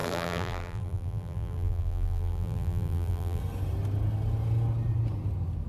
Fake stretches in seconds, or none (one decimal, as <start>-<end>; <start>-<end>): 0.0-3.4